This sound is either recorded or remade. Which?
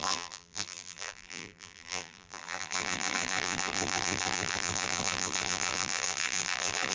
remade